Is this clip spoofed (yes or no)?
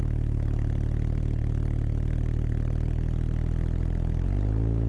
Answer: no